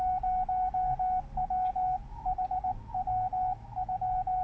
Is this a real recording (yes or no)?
yes